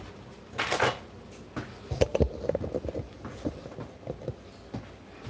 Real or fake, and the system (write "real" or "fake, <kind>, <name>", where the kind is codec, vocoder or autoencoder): real